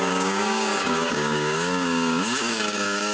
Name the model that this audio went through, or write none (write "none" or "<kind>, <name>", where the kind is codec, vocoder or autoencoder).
codec, DAC